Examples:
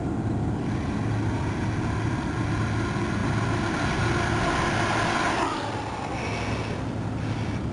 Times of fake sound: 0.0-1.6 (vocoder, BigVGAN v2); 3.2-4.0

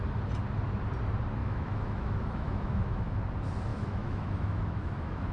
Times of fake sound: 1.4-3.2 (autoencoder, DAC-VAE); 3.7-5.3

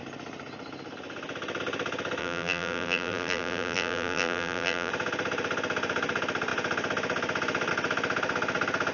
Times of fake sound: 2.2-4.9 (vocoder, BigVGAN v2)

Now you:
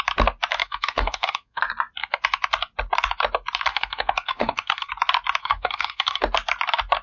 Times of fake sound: 0.6-1.6 (codec, SNAC); 3.7-4.9; 5.4-6.2

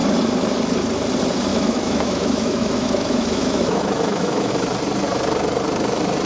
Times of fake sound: 1.5-4.5 (autoencoder, DAC-VAE)

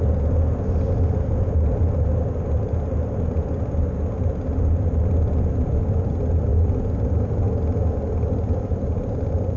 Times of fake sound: none

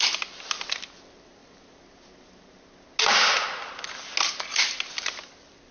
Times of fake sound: none